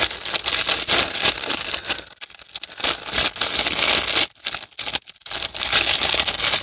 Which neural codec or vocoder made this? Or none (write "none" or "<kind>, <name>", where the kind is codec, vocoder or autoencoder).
none